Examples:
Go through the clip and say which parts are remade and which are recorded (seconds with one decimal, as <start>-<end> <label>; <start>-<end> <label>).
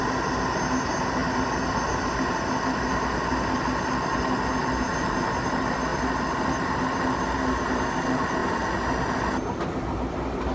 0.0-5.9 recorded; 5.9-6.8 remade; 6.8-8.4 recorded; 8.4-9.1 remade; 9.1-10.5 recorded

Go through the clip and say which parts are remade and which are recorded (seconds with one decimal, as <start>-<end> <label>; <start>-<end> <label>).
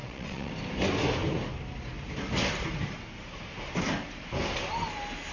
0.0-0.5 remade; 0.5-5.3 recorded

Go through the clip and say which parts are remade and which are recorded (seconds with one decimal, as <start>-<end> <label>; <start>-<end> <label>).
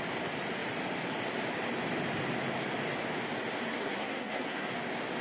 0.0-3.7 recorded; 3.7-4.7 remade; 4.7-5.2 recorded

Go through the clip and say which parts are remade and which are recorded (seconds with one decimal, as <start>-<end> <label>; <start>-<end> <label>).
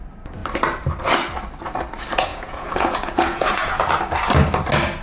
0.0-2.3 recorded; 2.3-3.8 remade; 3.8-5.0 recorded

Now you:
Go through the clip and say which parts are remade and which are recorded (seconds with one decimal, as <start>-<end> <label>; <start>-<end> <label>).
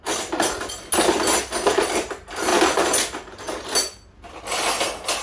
0.0-5.2 recorded